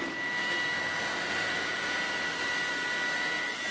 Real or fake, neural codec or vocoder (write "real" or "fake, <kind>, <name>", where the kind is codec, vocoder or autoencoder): real